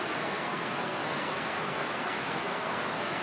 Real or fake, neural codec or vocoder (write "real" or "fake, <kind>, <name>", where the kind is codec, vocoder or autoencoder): fake, codec, SNAC